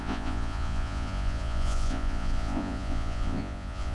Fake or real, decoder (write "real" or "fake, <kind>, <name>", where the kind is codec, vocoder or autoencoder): fake, vocoder, Vocos